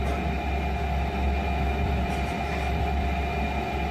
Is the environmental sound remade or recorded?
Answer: recorded